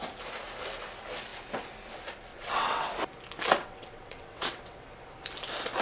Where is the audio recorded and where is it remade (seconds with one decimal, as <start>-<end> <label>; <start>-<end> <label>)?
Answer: 0.0-2.3 recorded; 2.3-2.9 remade; 2.9-3.6 recorded; 3.6-4.8 remade; 4.8-5.8 recorded